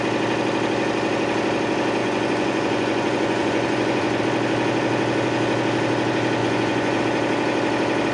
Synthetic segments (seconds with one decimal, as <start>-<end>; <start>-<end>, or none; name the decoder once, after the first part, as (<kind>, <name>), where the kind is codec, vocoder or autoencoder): 2.0-4.2 (vocoder, Vocos); 6.4-7.0